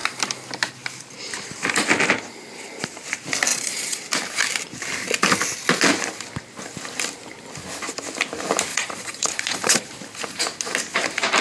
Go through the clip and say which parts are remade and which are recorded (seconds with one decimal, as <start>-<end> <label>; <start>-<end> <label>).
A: 0.0-3.5 recorded; 3.5-4.0 remade; 4.0-8.7 recorded; 8.7-10.0 remade; 10.0-11.4 recorded